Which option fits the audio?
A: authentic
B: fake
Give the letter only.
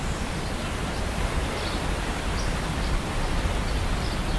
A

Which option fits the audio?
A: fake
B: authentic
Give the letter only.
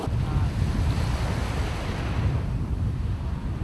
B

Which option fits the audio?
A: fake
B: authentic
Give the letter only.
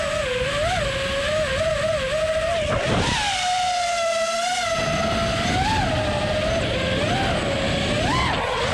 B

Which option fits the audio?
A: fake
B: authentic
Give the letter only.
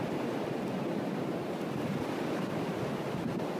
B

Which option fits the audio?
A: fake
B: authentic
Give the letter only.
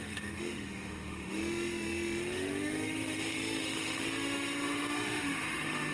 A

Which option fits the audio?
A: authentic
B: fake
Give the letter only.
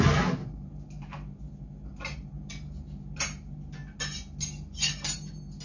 A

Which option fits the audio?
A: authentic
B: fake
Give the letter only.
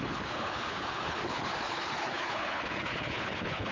B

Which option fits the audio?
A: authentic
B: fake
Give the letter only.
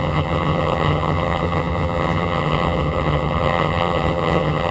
B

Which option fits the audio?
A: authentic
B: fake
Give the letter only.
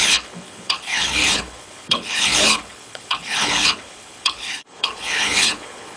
B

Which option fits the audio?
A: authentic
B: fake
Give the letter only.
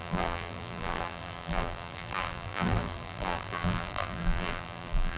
B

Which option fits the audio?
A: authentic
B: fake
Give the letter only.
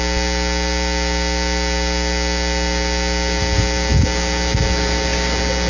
A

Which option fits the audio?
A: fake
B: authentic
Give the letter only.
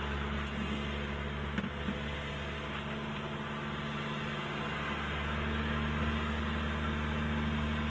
B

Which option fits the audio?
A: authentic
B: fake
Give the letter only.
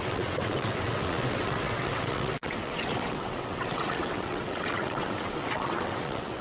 B